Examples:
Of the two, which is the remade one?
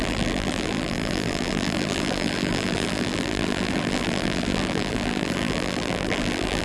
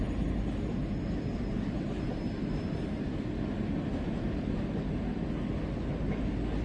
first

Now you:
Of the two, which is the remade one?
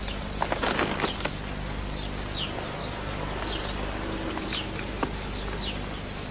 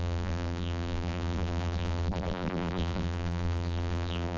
second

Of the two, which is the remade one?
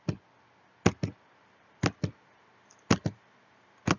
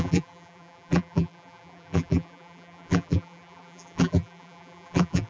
second